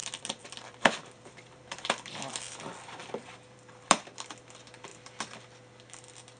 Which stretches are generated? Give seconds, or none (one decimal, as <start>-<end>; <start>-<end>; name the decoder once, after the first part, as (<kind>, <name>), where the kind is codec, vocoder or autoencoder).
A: 0.0-2.3 (vocoder, BigVGAN v2); 3.0-4.3; 4.9-5.4